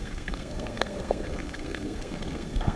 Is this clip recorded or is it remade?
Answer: remade